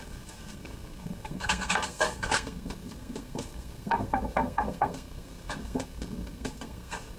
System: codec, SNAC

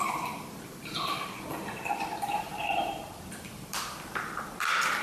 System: vocoder, BigVGAN v2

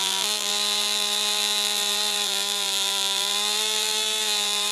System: vocoder, BigVGAN v2